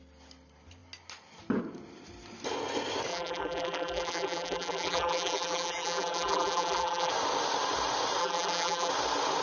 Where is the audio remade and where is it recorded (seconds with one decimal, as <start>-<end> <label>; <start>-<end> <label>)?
0.0-3.1 recorded; 3.1-7.1 remade; 7.1-8.2 recorded; 8.2-8.9 remade; 8.9-9.4 recorded